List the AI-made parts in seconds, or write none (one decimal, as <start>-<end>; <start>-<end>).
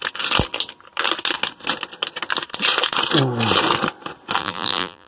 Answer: 4.4-5.1